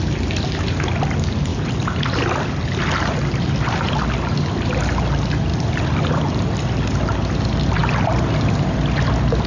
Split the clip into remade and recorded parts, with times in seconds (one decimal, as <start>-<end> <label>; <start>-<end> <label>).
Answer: 0.0-5.5 recorded; 5.5-6.3 remade; 6.3-7.8 recorded; 7.8-9.5 remade